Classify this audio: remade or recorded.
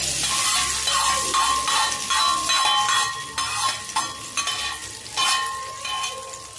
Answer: recorded